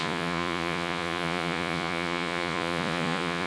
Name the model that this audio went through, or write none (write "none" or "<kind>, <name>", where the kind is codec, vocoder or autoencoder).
vocoder, Vocos